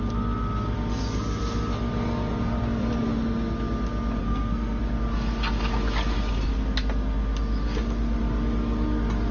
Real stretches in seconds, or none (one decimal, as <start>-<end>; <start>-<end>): 0.0-4.2; 4.8-9.3